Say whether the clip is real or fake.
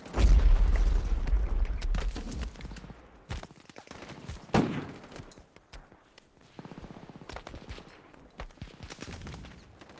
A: real